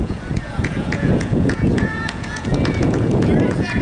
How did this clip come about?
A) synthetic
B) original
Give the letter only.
A